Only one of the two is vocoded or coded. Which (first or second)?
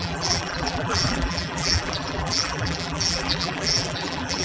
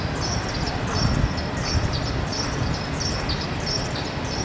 first